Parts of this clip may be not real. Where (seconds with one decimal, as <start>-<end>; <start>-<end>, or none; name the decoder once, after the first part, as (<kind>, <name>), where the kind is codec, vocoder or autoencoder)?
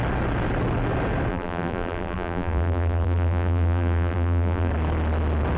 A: 1.3-4.7 (vocoder, BigVGAN v2)